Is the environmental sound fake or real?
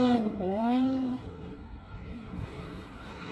fake